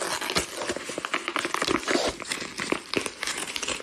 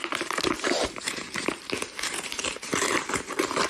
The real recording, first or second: first